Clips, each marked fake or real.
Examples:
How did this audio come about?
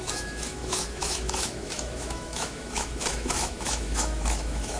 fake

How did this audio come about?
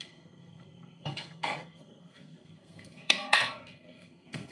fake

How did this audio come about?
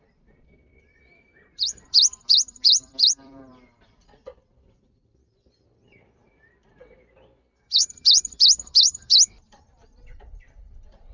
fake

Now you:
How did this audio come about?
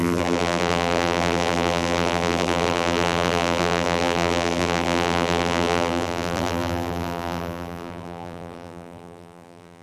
fake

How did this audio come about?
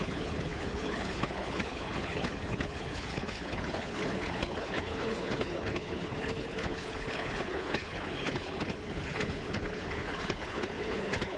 fake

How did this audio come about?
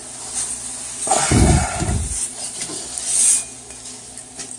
real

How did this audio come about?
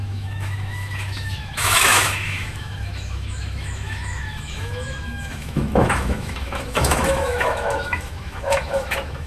fake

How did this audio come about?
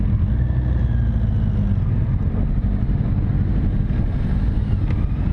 real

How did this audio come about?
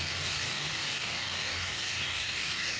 fake